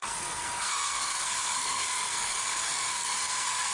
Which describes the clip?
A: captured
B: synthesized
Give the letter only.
B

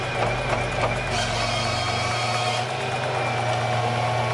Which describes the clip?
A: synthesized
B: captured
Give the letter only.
B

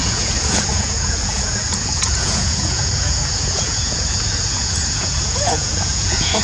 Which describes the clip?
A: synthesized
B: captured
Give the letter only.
A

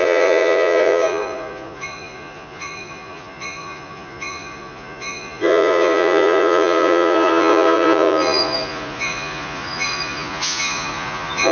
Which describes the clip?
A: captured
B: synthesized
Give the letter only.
B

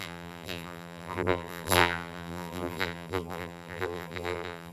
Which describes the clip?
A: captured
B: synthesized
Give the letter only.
B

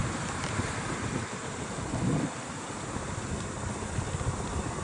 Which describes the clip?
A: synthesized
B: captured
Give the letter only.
B